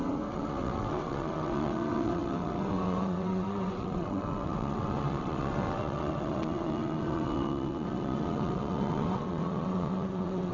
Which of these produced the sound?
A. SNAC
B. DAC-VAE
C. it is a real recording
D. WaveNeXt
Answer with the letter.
D